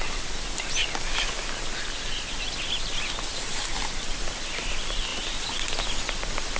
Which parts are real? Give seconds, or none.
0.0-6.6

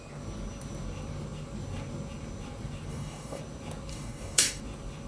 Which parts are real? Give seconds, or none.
0.0-2.9; 3.4-3.9; 4.6-5.1

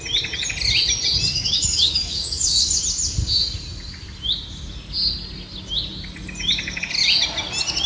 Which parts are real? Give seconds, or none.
0.0-1.3; 2.8-7.9